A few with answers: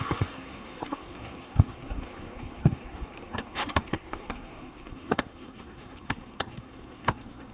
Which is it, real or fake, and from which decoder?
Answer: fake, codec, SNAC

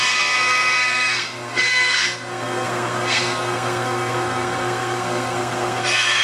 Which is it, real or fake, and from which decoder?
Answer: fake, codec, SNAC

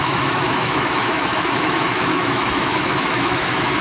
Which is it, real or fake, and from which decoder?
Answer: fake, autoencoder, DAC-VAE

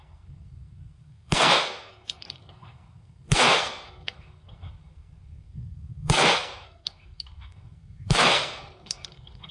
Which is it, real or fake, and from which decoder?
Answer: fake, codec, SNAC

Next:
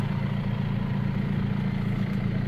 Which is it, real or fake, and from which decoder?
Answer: real